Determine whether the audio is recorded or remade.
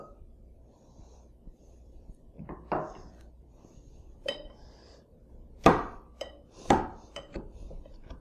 remade